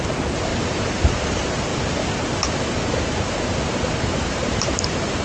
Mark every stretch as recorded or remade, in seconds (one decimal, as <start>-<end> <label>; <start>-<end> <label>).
0.0-1.7 remade; 1.7-2.5 recorded; 2.5-5.2 remade